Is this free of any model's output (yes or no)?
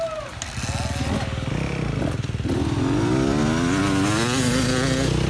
yes